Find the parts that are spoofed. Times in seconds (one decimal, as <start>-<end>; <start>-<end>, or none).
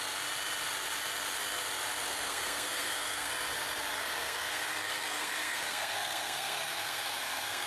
2.1-3.3; 3.9-7.7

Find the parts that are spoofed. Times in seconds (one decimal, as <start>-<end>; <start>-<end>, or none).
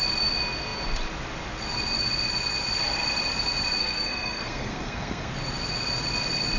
3.8-5.3